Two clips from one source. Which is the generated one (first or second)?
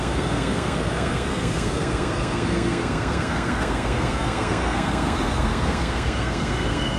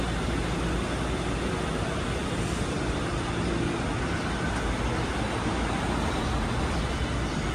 first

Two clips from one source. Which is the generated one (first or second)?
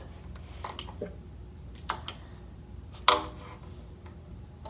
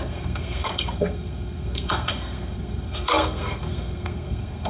second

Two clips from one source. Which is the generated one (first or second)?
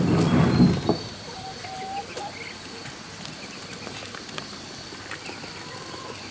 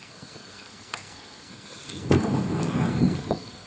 second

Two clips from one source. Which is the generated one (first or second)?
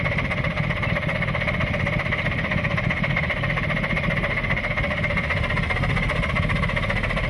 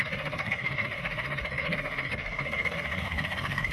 second